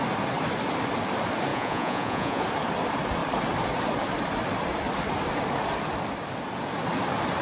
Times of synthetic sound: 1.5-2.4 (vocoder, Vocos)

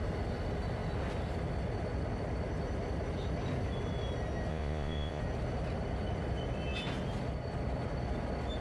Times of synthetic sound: 4.5-5.2 (vocoder, Vocos)

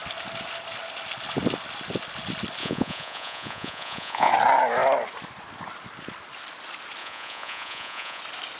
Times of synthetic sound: 2.6-4.3 (vocoder, Vocos); 7.0-8.2

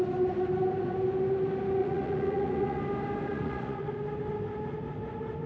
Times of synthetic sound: 1.8-2.8 (vocoder, Vocos); 3.3-3.9

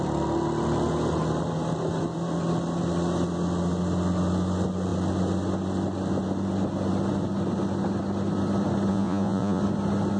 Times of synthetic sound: 8.9-9.6 (vocoder, Vocos)

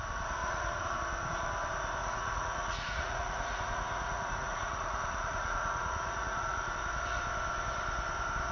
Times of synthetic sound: 0.4-1.0 (vocoder, Vocos); 2.0-6.7

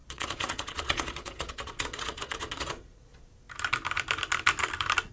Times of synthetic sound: 0.0-3.1 (vocoder, Vocos)